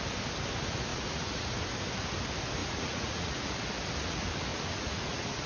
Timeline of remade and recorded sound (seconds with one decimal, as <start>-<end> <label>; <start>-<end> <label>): 0.0-0.9 recorded; 0.9-1.6 remade; 1.6-2.6 recorded; 2.6-3.5 remade; 3.5-4.5 recorded; 4.5-5.5 remade